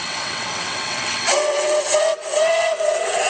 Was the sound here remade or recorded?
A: remade